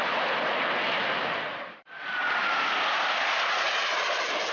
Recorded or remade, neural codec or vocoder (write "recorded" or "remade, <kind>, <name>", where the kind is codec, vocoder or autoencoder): recorded